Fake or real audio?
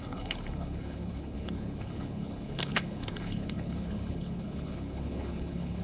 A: fake